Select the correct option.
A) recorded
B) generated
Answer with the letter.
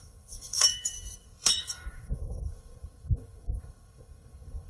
B